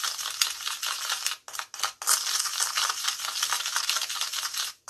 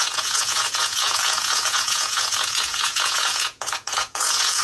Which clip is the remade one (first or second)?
second